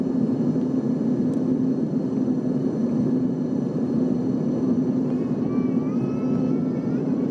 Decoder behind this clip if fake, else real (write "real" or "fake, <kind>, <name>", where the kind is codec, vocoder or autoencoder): fake, vocoder, BigVGAN v2